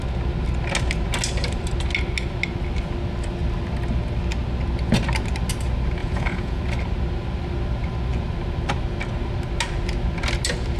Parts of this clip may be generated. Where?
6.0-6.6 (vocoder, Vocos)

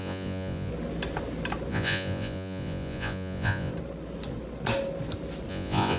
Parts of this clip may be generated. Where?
0.0-0.7 (vocoder, Vocos); 1.7-3.7; 5.5-6.0